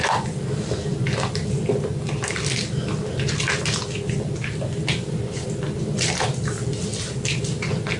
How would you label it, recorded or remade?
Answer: recorded